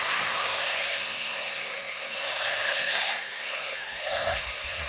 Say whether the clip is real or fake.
fake